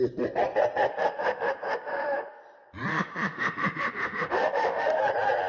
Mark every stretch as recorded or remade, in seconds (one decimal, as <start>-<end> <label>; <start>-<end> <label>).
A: 0.0-0.9 recorded; 0.9-2.4 remade; 2.4-2.9 recorded; 2.9-5.0 remade; 5.0-5.5 recorded